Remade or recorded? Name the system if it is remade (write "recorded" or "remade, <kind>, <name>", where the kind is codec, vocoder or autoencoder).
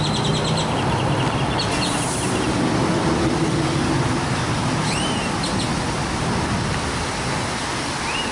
recorded